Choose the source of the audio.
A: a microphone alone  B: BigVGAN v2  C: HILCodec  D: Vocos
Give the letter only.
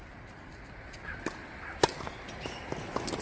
A